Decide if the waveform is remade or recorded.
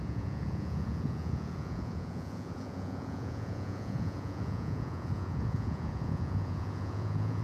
remade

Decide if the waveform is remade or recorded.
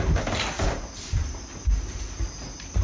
remade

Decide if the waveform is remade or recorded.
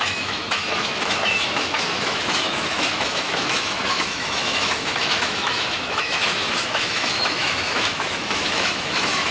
remade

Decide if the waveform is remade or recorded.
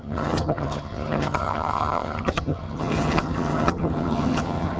remade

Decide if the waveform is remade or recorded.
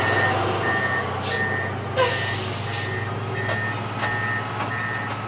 recorded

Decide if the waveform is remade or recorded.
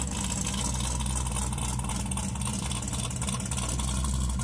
recorded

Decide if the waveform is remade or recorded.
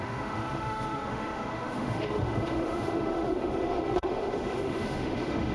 remade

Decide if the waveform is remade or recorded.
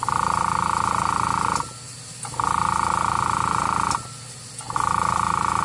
recorded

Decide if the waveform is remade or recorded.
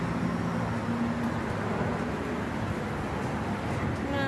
recorded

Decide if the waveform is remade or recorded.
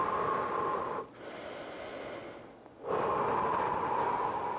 recorded